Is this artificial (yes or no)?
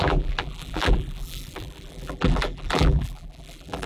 yes